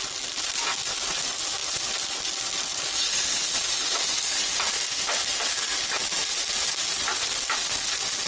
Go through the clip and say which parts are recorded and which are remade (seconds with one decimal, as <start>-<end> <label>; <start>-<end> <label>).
0.0-8.3 recorded